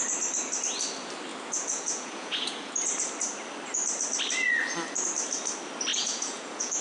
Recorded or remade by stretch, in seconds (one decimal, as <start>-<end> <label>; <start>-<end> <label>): 0.0-1.3 recorded; 1.3-2.7 remade; 2.7-5.9 recorded; 5.9-6.8 remade